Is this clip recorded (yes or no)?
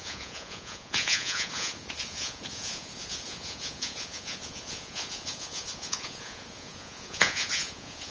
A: no